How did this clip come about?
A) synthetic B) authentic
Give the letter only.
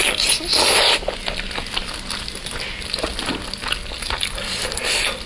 B